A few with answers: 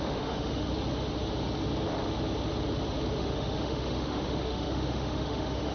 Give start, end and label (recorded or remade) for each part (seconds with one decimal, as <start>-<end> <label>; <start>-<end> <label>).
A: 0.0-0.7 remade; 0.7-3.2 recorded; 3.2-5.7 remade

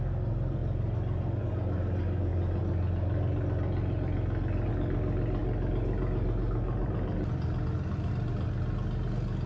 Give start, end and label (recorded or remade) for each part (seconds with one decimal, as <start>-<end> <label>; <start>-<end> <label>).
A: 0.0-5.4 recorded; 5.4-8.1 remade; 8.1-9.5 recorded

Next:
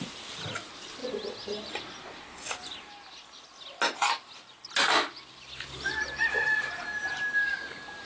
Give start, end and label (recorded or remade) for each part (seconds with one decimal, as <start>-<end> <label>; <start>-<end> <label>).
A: 0.0-8.1 recorded

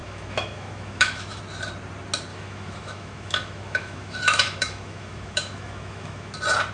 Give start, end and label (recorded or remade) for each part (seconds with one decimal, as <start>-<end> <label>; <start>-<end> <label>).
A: 0.0-1.4 remade; 1.4-2.3 recorded; 2.3-6.3 remade; 6.3-6.7 recorded

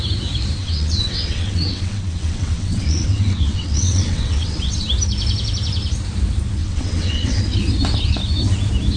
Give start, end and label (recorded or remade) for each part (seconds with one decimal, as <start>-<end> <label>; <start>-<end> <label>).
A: 0.0-0.6 recorded; 0.6-4.9 remade; 4.9-6.6 recorded; 6.6-7.4 remade; 7.4-9.0 recorded

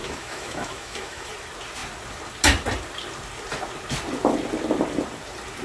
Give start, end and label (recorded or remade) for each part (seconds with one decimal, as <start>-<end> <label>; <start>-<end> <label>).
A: 0.0-1.3 remade; 1.3-5.6 recorded